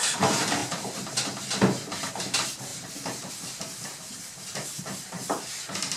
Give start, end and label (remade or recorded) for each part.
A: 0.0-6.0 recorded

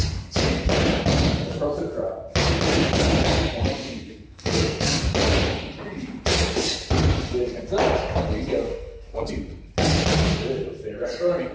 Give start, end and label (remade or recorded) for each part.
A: 0.0-3.8 recorded; 3.8-5.0 remade; 5.0-8.7 recorded; 8.7-9.3 remade; 9.3-11.5 recorded

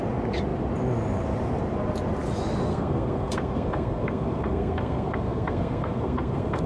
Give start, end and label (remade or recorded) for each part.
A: 0.0-2.7 recorded; 2.7-6.7 remade

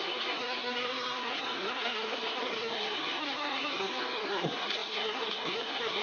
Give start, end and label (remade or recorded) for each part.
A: 0.0-6.0 remade

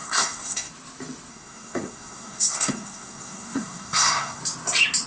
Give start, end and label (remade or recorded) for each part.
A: 0.0-0.7 remade; 0.7-1.3 recorded; 1.3-4.4 remade; 4.4-5.1 recorded

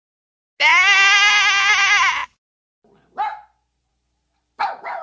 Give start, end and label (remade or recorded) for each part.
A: 0.0-5.0 recorded

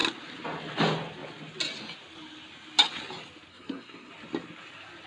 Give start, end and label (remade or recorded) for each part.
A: 0.0-3.5 recorded; 3.5-4.1 remade; 4.1-5.1 recorded

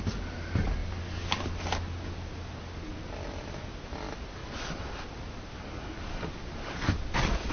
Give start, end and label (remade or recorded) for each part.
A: 0.0-7.5 recorded